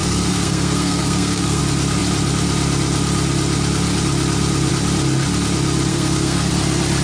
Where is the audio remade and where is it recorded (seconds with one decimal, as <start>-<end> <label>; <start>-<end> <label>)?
0.0-1.6 remade; 1.6-5.9 recorded; 5.9-6.5 remade; 6.5-7.0 recorded